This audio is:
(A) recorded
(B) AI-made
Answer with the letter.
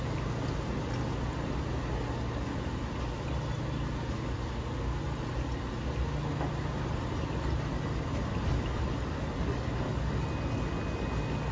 A